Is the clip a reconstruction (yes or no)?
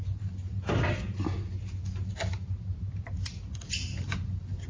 no